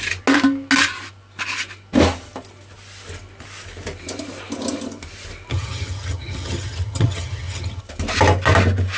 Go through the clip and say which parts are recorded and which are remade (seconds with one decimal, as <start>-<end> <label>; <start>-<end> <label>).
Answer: 0.0-5.5 recorded; 5.5-7.8 remade; 7.8-9.0 recorded